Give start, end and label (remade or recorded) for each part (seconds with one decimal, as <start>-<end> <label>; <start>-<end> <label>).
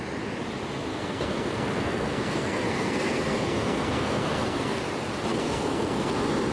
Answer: 0.0-0.9 recorded; 0.9-4.8 remade; 4.8-5.3 recorded; 5.3-6.1 remade; 6.1-6.5 recorded